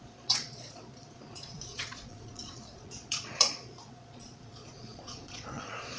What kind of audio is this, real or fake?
fake